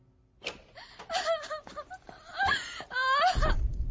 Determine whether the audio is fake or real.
real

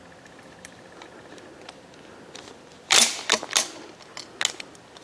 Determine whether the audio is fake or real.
real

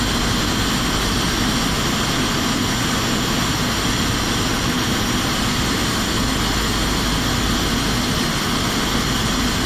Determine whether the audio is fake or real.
real